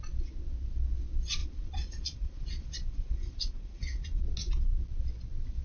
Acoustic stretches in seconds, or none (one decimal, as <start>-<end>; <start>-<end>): 0.0-1.4; 4.2-5.6

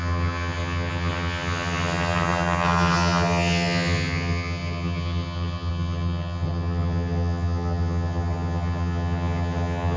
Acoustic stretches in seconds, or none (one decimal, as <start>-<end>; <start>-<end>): none